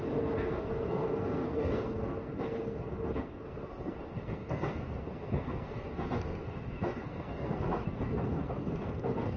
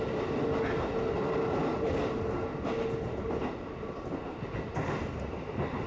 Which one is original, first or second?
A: second